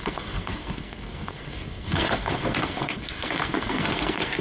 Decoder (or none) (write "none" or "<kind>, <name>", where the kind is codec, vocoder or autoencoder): codec, SNAC